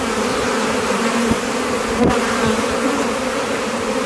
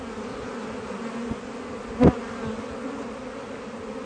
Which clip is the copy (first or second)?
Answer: first